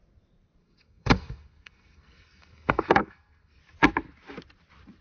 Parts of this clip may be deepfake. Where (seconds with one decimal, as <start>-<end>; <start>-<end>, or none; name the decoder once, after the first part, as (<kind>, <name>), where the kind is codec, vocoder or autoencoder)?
0.6-3.6 (codec, SNAC)